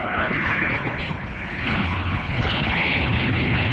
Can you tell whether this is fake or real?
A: fake